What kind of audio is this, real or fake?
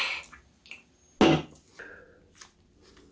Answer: real